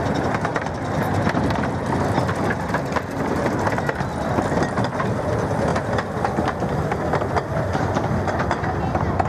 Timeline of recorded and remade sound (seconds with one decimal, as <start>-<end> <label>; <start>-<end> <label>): 0.0-9.3 recorded